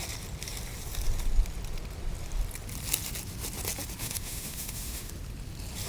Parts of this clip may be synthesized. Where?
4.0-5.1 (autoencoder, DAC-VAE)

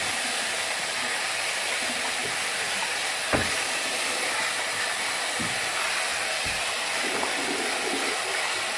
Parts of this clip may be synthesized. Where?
none

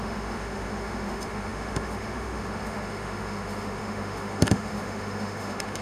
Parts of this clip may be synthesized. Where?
0.0-5.8 (autoencoder, DAC-VAE)

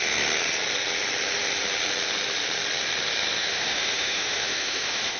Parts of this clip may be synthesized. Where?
3.4-5.2 (autoencoder, DAC-VAE)

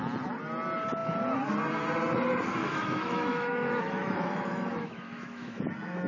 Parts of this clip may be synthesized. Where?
2.6-5.6 (autoencoder, DAC-VAE)

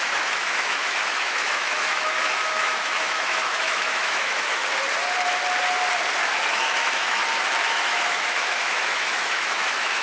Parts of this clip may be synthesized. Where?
0.0-4.6 (autoencoder, DAC-VAE); 6.5-7.2; 7.7-10.0